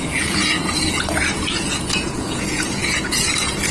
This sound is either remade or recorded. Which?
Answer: remade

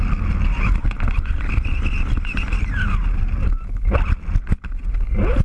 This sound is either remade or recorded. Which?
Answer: recorded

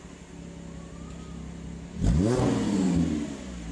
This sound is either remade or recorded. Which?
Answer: recorded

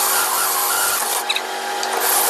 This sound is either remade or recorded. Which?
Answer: recorded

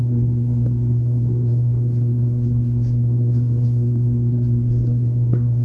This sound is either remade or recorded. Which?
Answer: remade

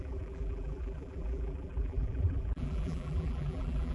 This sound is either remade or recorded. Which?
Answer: remade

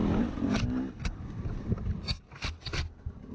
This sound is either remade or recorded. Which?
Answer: recorded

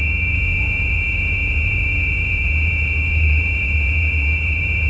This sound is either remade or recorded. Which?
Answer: remade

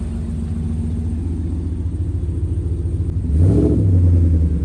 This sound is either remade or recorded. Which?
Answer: recorded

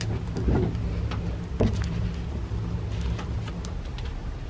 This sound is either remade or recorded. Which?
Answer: recorded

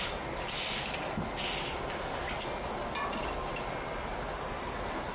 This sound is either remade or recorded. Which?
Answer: recorded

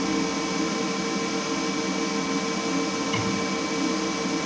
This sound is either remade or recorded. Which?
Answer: recorded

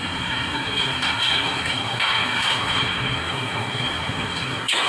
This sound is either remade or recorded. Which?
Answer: remade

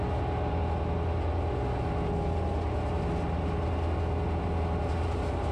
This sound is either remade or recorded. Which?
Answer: recorded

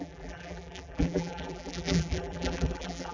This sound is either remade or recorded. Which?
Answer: remade